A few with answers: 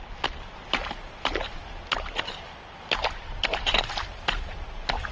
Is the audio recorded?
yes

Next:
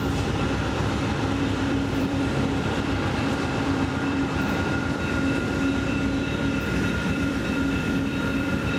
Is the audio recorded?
no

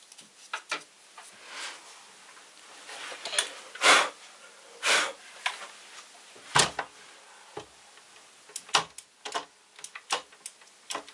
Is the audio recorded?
yes